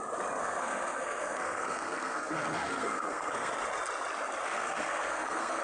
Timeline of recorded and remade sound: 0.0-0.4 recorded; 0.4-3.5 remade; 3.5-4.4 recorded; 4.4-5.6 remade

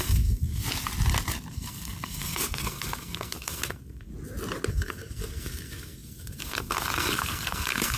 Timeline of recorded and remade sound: 0.0-0.6 remade; 0.6-1.5 recorded; 1.5-4.1 remade; 4.1-4.7 recorded; 4.7-8.0 remade

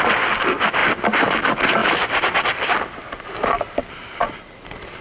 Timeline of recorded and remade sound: 0.0-5.0 recorded

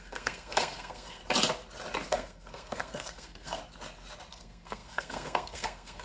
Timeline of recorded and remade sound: 0.0-1.2 remade; 1.2-2.1 recorded; 2.1-3.6 remade; 3.6-4.3 recorded; 4.3-6.0 remade

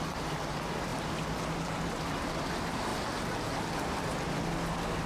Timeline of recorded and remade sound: 0.0-5.1 recorded

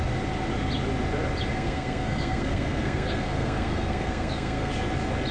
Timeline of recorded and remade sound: 0.0-1.5 recorded; 1.5-4.7 remade; 4.7-5.3 recorded

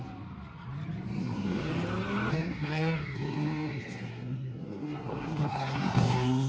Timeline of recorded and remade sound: 0.0-1.2 recorded; 1.2-1.7 remade; 1.7-2.3 recorded; 2.3-6.5 remade